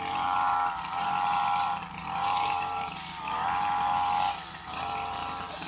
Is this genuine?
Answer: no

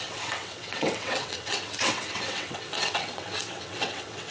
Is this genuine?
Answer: no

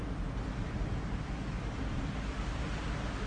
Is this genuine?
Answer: yes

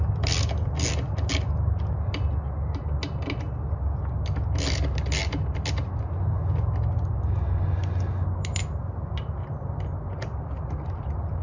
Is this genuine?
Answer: yes